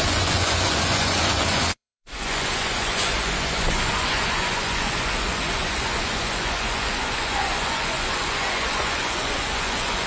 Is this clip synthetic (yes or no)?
yes